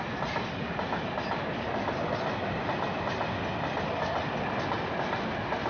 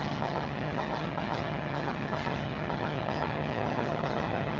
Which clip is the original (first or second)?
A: first